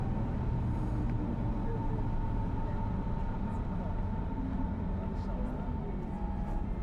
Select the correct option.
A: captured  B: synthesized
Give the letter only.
A